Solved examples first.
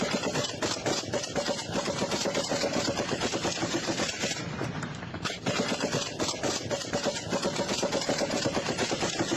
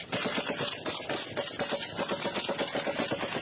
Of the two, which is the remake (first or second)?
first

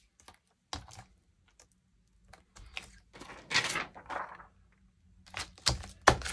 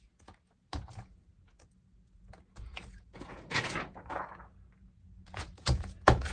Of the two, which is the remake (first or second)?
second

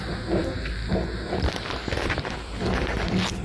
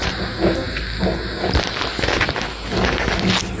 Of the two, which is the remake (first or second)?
first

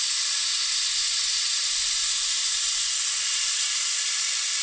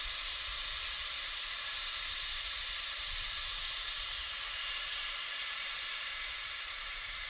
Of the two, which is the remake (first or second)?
second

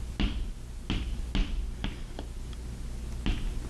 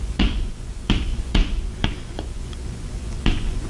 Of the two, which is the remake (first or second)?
second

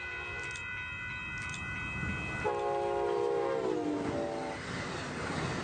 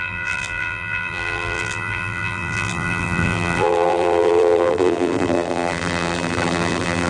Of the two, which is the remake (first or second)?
second